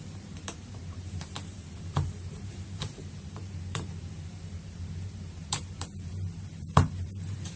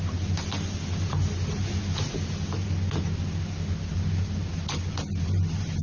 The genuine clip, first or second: second